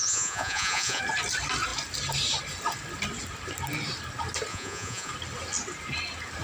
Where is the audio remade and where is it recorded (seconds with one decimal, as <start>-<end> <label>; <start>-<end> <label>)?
0.0-1.0 remade; 1.0-4.5 recorded; 4.5-5.1 remade; 5.1-6.4 recorded